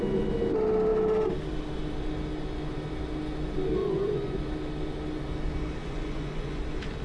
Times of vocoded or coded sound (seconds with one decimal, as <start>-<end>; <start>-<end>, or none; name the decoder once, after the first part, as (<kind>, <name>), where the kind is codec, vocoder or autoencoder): 3.8-4.4 (vocoder, Vocos); 5.8-6.6